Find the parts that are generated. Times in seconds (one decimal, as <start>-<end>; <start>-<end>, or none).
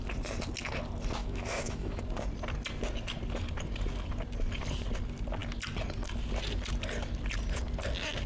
1.2-2.0